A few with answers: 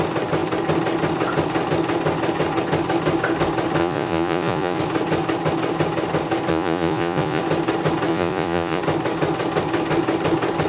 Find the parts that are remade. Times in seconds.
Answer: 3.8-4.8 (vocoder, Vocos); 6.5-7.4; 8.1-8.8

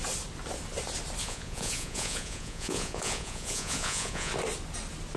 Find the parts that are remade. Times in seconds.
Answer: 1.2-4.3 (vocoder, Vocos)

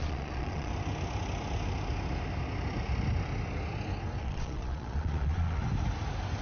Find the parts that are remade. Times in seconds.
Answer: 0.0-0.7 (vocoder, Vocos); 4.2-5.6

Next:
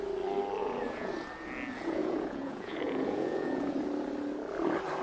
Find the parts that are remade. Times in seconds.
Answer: 0.6-1.1 (vocoder, Vocos); 2.0-3.7

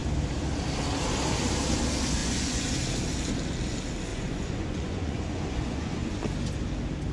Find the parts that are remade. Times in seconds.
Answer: 2.2-2.7 (vocoder, Vocos); 4.1-6.2